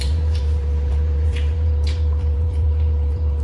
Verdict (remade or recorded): remade